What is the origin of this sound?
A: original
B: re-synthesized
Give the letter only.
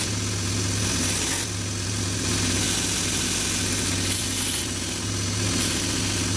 A